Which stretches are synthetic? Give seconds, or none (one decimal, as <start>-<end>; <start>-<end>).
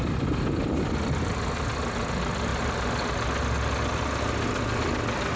none